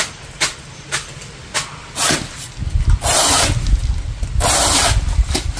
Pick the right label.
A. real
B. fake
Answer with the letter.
A